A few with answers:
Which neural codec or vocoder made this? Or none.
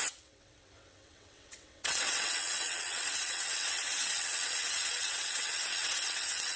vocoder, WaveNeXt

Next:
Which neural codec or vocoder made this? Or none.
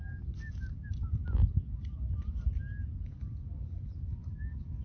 none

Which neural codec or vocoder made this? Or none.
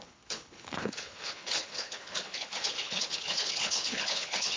codec, HILCodec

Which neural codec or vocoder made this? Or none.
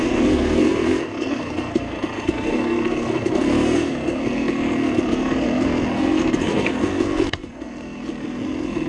codec, SNAC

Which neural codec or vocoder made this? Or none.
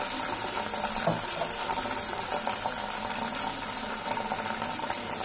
none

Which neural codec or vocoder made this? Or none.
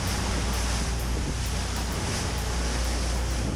none